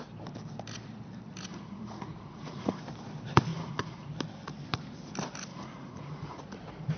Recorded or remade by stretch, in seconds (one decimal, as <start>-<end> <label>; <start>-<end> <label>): 0.0-1.5 recorded; 1.5-2.8 remade; 2.8-3.5 recorded; 3.5-4.1 remade; 4.1-5.5 recorded; 5.5-6.4 remade; 6.4-7.0 recorded